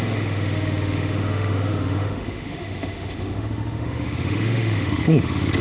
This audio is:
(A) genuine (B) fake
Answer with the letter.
B